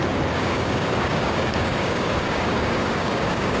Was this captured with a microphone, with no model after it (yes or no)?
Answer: no